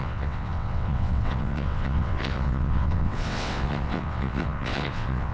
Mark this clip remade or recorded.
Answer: remade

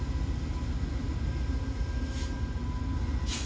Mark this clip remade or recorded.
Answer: recorded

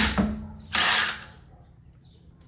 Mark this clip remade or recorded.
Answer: recorded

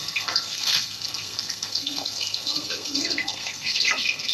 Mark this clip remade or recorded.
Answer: remade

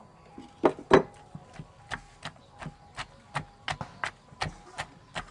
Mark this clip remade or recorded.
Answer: recorded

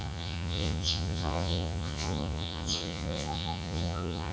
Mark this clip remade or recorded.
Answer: remade